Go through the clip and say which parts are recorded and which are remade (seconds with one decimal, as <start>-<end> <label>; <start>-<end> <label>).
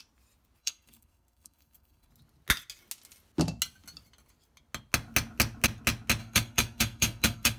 0.0-0.6 recorded; 0.6-2.1 remade; 2.1-6.2 recorded; 6.2-7.6 remade